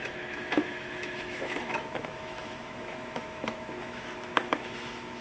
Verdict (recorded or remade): remade